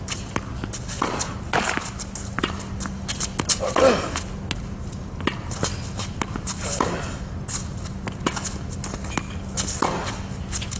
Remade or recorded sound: recorded